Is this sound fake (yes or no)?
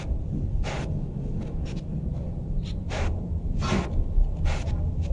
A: no